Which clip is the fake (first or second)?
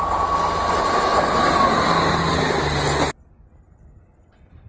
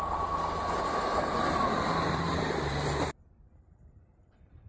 second